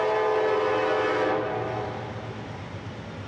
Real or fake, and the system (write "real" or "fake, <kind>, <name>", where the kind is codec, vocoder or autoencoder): real